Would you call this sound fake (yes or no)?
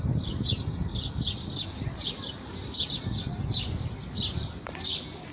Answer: no